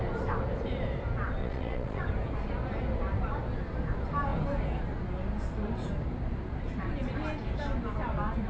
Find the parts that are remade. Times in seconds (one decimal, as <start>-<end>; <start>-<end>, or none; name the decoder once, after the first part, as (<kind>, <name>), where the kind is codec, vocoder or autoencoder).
1.4-2.0 (vocoder, Vocos)